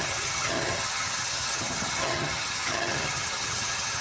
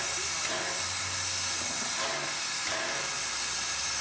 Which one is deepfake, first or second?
first